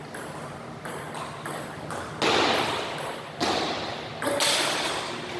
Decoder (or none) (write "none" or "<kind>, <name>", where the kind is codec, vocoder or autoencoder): none